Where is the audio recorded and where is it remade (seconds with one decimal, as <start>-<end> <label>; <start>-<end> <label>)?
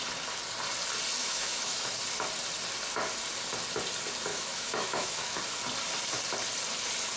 0.0-1.2 recorded; 1.2-1.9 remade; 1.9-4.3 recorded; 4.3-5.4 remade; 5.4-7.2 recorded